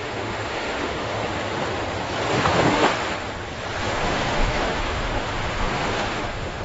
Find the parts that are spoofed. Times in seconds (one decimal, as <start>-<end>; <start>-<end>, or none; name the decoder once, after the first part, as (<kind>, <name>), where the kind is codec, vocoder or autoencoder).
0.0-1.2 (autoencoder, DAC-VAE); 2.3-2.9; 3.8-6.6